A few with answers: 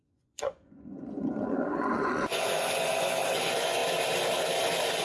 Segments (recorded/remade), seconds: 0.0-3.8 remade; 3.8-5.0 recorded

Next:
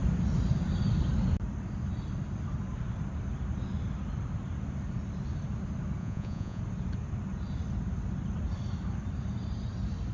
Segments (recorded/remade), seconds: 0.0-6.0 recorded; 6.0-6.6 remade; 6.6-10.1 recorded

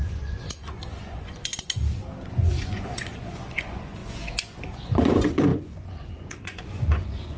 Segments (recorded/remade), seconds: 0.0-1.5 remade; 1.5-2.2 recorded; 2.2-7.4 remade

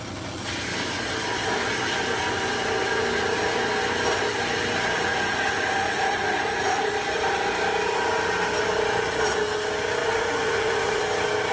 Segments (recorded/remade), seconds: 0.0-5.1 recorded; 5.1-6.9 remade; 6.9-10.0 recorded; 10.0-11.0 remade; 11.0-11.5 recorded

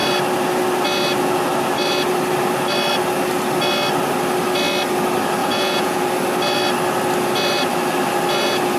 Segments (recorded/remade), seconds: 0.0-5.4 recorded; 5.4-6.0 remade; 6.0-8.8 recorded